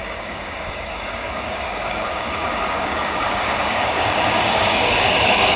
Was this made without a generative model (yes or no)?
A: no